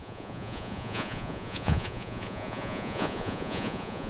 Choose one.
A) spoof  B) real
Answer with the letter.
A